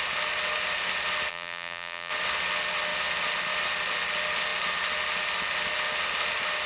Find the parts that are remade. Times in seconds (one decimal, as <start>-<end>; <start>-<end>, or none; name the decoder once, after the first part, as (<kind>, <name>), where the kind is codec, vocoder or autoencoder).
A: 1.3-2.1 (vocoder, BigVGAN v2)